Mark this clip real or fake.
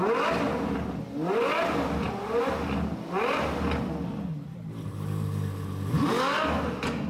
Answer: real